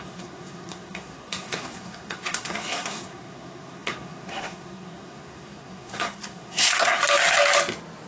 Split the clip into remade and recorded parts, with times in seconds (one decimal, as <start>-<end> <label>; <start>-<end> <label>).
0.0-7.0 remade; 7.0-8.1 recorded